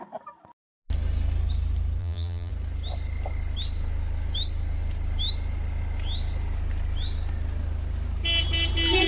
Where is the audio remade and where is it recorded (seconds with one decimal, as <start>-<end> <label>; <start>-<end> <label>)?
0.0-2.0 recorded; 2.0-2.5 remade; 2.5-9.1 recorded

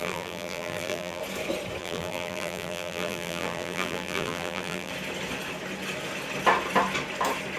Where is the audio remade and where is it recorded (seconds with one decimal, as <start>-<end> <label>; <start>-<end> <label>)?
0.0-1.2 remade; 1.2-1.8 recorded; 1.8-4.9 remade; 4.9-7.6 recorded

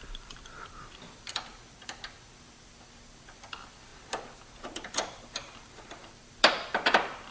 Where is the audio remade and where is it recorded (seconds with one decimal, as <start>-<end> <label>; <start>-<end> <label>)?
0.0-1.5 remade; 1.5-2.6 recorded; 2.6-3.9 remade; 3.9-4.6 recorded; 4.6-7.3 remade

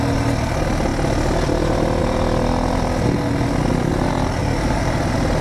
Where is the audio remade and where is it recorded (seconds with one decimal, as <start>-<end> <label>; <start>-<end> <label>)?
0.0-4.4 recorded; 4.4-5.4 remade

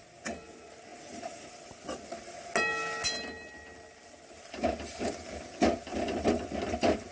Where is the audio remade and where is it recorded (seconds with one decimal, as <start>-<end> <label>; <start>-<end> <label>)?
0.0-0.9 recorded; 0.9-1.5 remade; 1.5-5.9 recorded; 5.9-7.1 remade

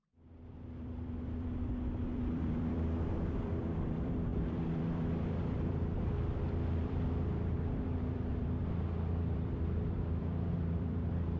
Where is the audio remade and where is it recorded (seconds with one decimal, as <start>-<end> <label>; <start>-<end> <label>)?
0.0-8.6 remade; 8.6-9.1 recorded; 9.1-11.4 remade

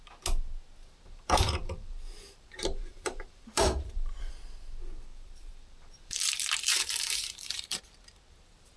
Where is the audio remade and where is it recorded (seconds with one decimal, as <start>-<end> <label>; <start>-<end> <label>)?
0.0-0.8 recorded; 0.8-4.3 remade; 4.3-5.1 recorded; 5.1-7.8 remade; 7.8-8.8 recorded